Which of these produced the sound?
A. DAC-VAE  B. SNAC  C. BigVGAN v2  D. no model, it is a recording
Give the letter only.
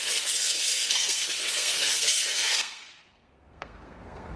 B